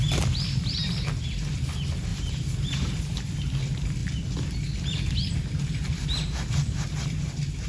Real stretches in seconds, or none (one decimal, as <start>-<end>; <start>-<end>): 0.0-2.1; 3.3-7.7